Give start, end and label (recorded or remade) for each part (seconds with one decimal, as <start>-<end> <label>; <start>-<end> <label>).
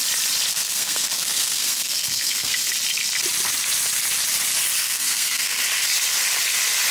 0.0-0.5 recorded; 0.5-2.7 remade; 2.7-4.8 recorded; 4.8-5.6 remade; 5.6-6.9 recorded